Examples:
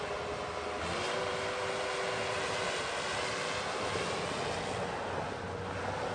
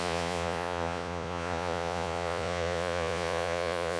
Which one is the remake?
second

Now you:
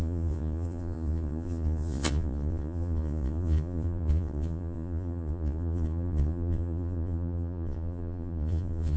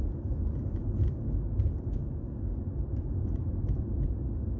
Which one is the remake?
first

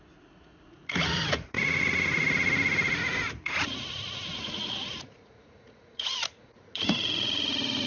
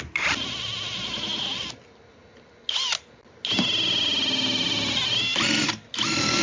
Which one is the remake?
first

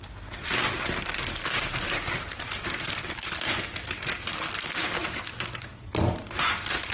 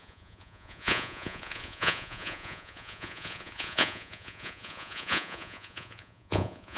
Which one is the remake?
second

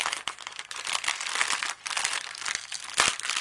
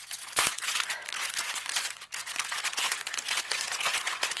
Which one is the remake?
second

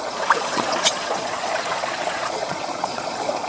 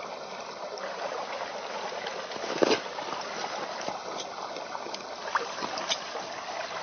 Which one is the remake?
first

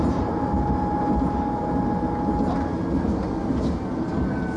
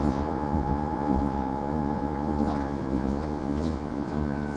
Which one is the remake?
second